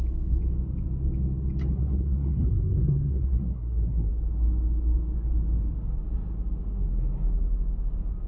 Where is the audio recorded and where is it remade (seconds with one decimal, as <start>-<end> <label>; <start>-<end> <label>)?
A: 0.0-1.7 recorded; 1.7-4.1 remade; 4.1-8.3 recorded